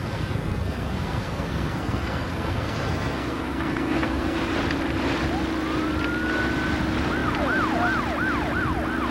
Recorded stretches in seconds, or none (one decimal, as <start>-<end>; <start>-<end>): 4.4-9.1